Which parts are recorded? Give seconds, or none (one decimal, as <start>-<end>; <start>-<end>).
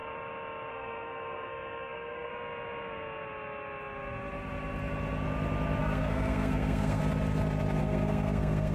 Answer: 0.0-0.7; 2.3-5.8; 7.0-7.8